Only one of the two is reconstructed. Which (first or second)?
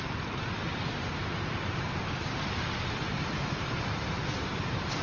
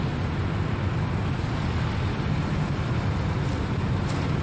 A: first